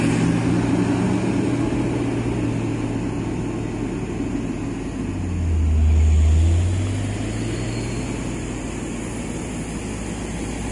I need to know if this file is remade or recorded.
recorded